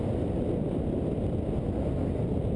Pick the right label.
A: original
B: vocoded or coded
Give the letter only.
A